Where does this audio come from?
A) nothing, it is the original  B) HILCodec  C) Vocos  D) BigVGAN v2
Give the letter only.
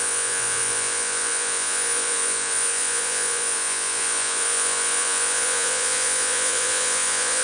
C